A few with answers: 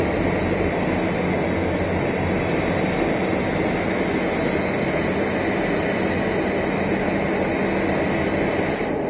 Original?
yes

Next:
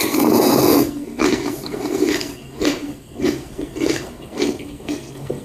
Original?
no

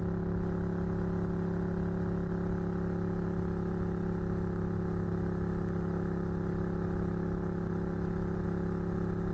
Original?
yes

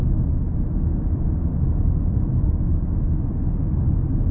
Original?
yes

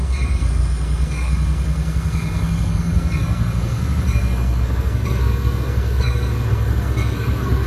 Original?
no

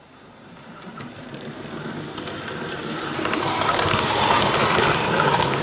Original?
no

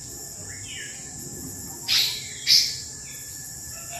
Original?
yes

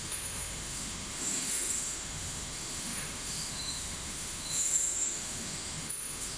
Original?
no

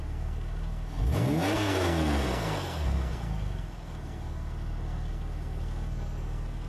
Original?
no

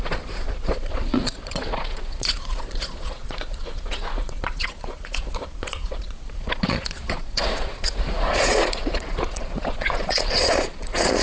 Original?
no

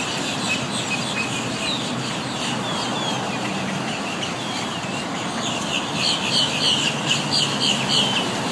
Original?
yes